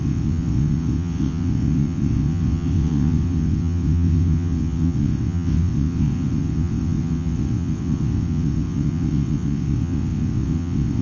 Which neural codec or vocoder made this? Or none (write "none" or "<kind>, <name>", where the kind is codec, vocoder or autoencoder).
vocoder, WaveNeXt